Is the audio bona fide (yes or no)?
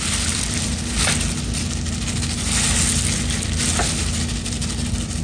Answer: yes